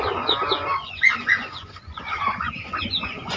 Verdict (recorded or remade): remade